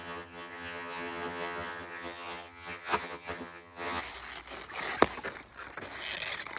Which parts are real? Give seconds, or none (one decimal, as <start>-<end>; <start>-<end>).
4.0-6.6